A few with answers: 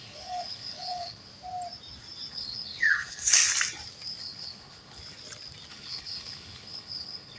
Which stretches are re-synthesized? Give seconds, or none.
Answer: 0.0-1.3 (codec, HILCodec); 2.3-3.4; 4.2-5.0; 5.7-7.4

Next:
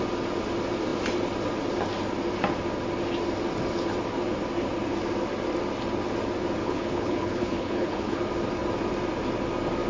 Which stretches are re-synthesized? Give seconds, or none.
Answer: 6.6-8.2 (codec, HILCodec)

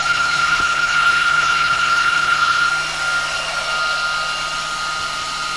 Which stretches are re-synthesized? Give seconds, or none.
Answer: 0.0-2.7 (codec, HILCodec)

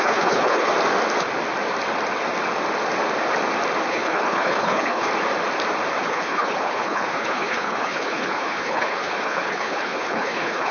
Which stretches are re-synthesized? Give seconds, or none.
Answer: 0.0-0.7 (codec, HILCodec); 3.9-5.1; 6.0-10.7

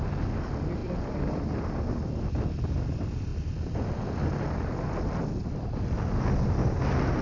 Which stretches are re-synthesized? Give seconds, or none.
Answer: none

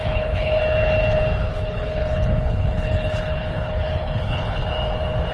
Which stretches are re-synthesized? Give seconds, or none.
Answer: 0.0-0.6 (codec, HILCodec); 1.5-4.7

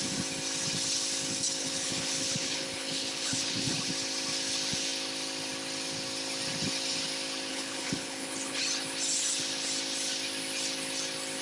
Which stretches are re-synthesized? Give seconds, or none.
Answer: 1.6-3.9 (codec, HILCodec); 7.5-8.6